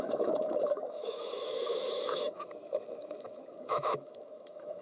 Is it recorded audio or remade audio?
remade